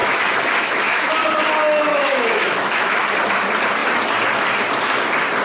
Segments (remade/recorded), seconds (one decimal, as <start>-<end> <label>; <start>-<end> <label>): 0.0-1.1 remade; 1.1-1.9 recorded; 1.9-3.0 remade; 3.0-5.4 recorded